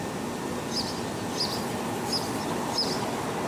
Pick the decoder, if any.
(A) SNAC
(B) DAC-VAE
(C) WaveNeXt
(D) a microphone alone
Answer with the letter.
D